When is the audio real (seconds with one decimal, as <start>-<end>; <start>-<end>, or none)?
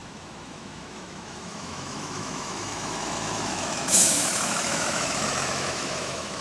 none